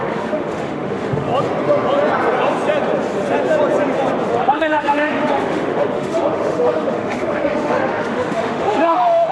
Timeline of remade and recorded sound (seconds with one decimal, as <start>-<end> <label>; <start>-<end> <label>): 0.0-1.3 remade; 1.3-4.3 recorded; 4.3-9.3 remade